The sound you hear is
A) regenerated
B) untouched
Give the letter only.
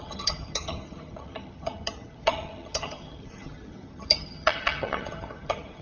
A